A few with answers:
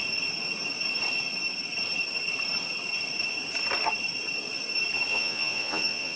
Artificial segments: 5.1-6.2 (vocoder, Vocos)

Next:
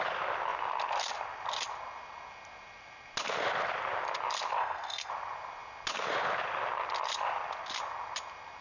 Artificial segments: 4.6-5.1 (codec, SNAC)

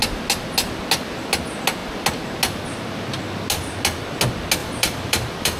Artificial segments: 4.6-5.6 (vocoder, BigVGAN v2)

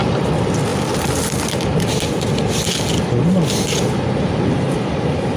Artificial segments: none

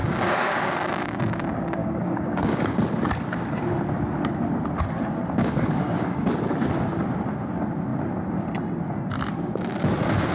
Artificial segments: 0.0-1.2 (codec, DAC); 1.8-2.8; 5.4-6.3